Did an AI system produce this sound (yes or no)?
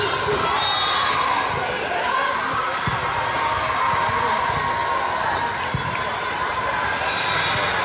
no